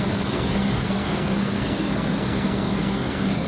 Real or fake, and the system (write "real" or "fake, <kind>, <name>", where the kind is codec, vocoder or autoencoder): fake, codec, SNAC